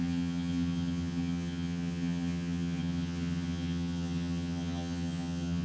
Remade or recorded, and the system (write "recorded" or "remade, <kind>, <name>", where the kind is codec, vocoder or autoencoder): remade, vocoder, HiFi-GAN